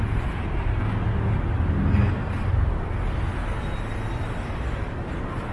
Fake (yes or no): no